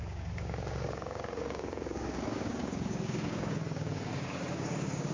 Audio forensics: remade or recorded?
remade